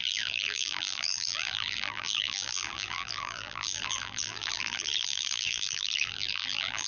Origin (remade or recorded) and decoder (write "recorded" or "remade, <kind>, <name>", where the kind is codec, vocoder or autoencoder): remade, vocoder, BigVGAN v2